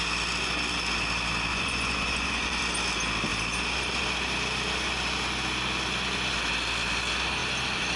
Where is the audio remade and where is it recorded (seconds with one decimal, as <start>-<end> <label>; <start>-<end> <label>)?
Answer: 0.0-1.5 recorded; 1.5-2.6 remade; 2.6-8.0 recorded